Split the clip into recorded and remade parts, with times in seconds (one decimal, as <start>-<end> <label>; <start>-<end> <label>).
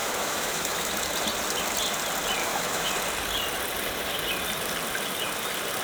0.0-0.9 remade; 0.9-2.4 recorded; 2.4-2.9 remade; 2.9-5.8 recorded